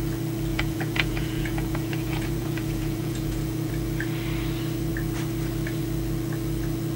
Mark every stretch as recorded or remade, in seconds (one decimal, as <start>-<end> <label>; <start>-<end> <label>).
0.0-0.5 recorded; 0.5-3.7 remade; 3.7-7.0 recorded